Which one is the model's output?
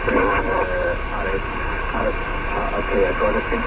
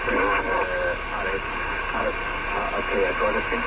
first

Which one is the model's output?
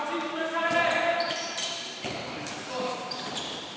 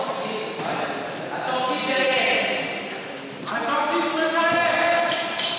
first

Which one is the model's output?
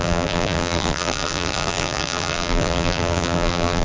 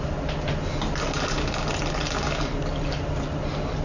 first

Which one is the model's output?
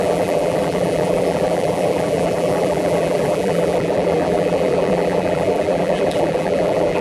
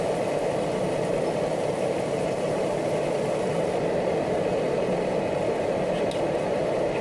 first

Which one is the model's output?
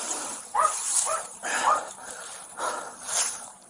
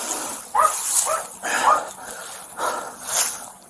first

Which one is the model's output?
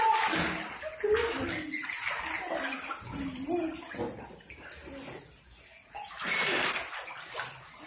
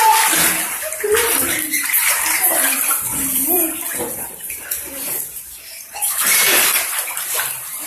second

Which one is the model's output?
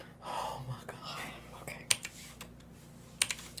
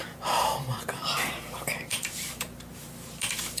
second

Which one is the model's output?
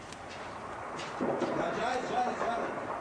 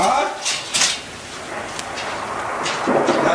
first